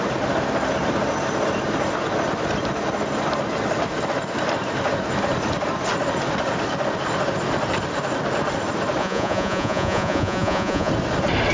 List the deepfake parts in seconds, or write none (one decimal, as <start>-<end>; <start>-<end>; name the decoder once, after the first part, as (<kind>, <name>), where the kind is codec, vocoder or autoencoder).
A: 9.0-10.9 (vocoder, Vocos)